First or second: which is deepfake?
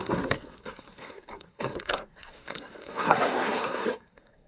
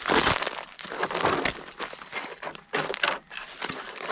first